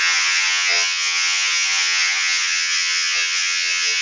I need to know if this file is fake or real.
fake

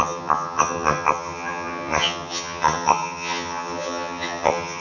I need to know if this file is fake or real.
fake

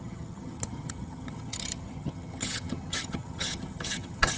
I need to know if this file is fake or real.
fake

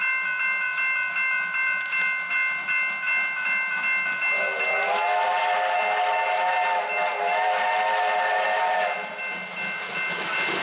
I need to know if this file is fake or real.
real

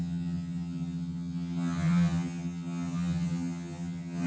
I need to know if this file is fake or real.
fake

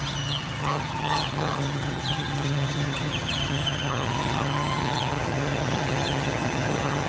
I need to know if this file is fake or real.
fake